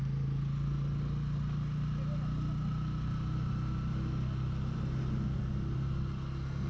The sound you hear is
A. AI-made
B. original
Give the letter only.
B